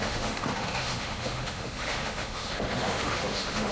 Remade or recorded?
remade